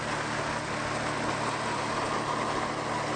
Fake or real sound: real